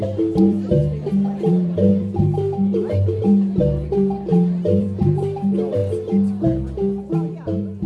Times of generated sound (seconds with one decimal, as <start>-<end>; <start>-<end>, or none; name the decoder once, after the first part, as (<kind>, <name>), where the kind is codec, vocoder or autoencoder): 0.0-0.8 (vocoder, BigVGAN v2); 1.5-4.3; 4.8-5.8; 7.0-7.9

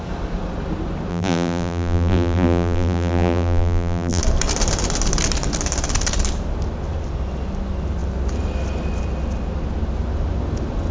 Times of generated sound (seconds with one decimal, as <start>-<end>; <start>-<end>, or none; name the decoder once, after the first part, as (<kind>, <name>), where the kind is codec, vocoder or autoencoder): 1.1-4.2 (vocoder, BigVGAN v2)

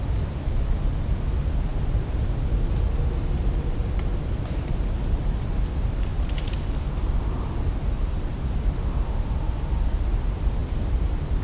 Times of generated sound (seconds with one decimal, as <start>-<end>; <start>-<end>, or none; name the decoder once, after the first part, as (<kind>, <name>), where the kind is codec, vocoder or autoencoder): 3.8-5.4 (vocoder, BigVGAN v2); 6.1-9.7

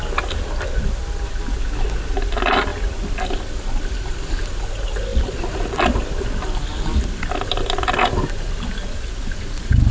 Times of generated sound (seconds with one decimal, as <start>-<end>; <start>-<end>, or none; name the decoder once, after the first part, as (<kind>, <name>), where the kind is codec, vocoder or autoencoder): 2.7-4.1 (vocoder, BigVGAN v2); 5.1-7.3

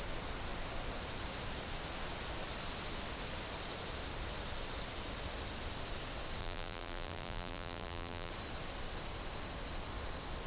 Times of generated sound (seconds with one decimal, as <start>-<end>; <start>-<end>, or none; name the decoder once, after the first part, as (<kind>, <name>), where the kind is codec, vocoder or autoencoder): 6.4-8.3 (vocoder, BigVGAN v2)

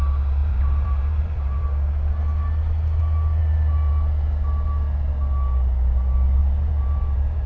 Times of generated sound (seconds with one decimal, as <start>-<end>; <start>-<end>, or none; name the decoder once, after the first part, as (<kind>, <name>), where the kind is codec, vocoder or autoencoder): 0.4-1.6 (vocoder, BigVGAN v2); 6.4-7.5

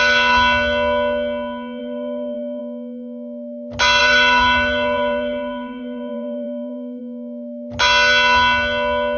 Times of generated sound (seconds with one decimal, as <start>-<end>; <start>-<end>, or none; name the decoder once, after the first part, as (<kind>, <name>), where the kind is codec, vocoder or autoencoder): 1.8-2.6 (vocoder, BigVGAN v2); 4.0-7.0